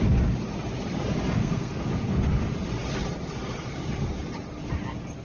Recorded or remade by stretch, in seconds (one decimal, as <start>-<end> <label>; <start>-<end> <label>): 0.0-1.4 recorded; 1.4-1.9 remade; 1.9-5.2 recorded